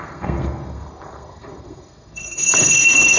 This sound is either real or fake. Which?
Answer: fake